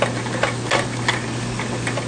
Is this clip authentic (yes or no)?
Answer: yes